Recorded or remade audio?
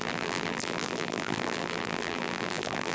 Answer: remade